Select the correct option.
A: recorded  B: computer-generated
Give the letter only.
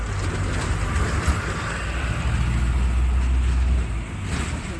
A